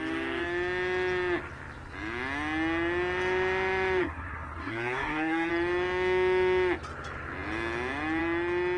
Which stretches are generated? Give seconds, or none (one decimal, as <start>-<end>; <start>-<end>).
4.0-5.5